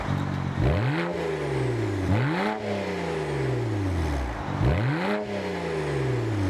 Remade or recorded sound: recorded